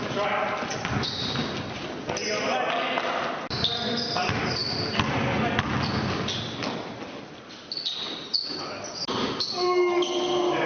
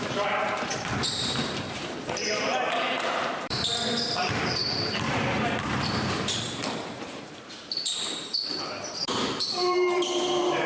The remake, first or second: second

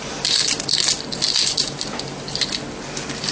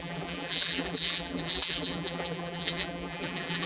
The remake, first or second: second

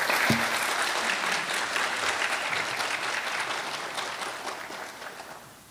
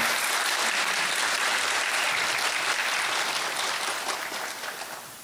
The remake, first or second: second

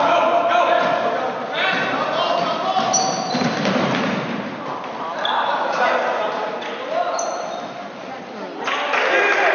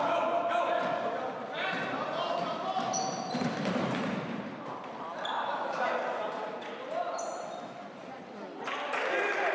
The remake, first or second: second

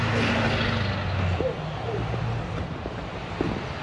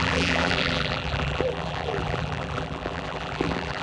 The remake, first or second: second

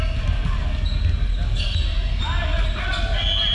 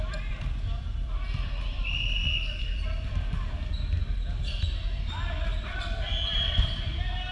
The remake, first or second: second